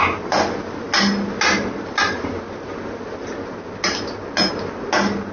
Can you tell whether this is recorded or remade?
recorded